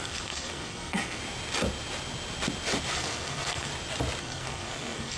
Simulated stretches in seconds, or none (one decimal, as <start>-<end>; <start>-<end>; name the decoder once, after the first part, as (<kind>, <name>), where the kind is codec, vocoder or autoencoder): 0.0-1.2 (codec, SNAC); 2.9-3.7; 4.2-5.2